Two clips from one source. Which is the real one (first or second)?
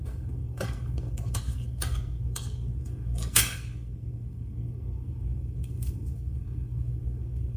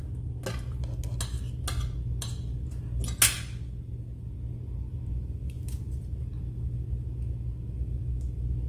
second